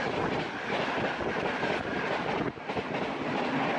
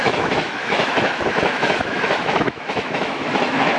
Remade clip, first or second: second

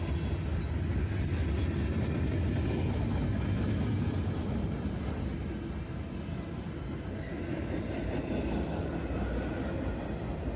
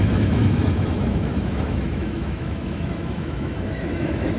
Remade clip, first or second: second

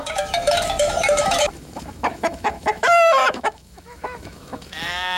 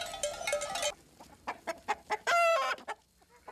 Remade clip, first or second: first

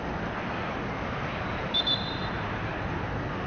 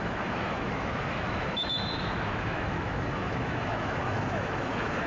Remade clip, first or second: second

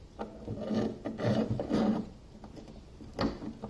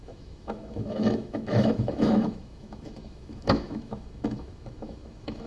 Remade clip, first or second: second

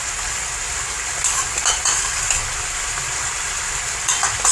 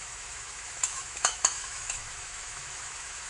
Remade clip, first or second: second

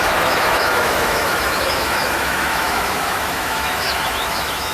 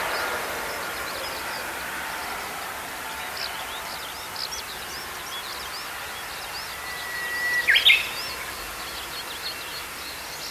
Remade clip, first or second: first